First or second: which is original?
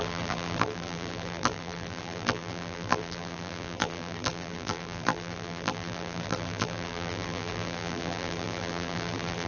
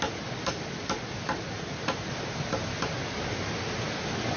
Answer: second